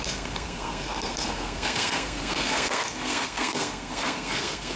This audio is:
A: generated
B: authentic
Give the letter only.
A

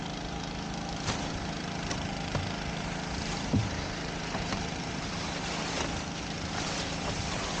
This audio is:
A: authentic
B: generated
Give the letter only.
B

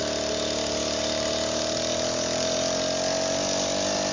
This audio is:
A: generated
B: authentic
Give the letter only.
B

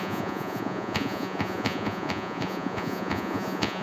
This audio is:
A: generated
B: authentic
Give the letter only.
A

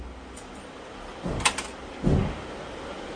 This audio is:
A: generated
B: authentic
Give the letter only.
B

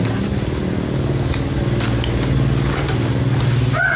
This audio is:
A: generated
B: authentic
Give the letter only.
B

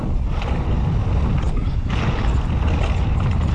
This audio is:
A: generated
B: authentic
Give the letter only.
B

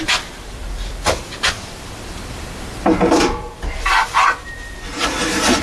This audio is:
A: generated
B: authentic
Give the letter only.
A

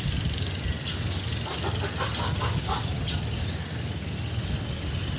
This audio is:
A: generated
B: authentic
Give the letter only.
B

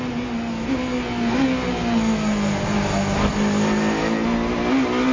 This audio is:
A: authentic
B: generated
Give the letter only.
A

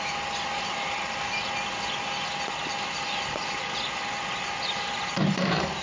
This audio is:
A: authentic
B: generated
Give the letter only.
A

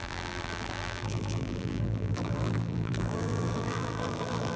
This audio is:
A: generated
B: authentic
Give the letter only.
A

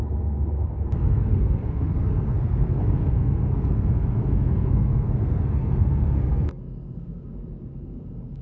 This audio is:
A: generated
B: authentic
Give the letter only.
A